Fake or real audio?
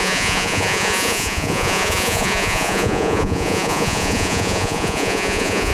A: fake